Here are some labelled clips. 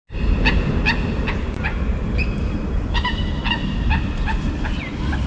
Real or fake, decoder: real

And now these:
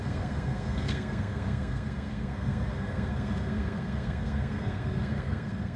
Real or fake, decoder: fake, codec, SNAC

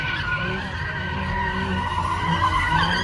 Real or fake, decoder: real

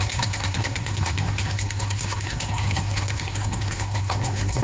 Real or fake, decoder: fake, codec, SNAC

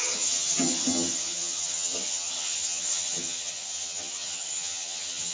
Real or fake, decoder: fake, vocoder, HiFi-GAN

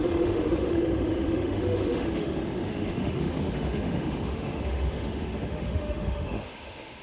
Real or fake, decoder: fake, autoencoder, DAC-VAE